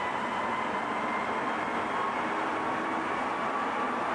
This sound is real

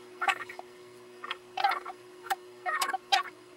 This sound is fake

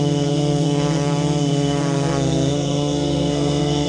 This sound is fake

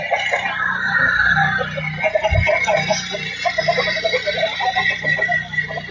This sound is real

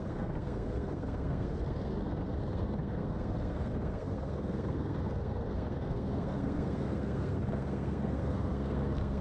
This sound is fake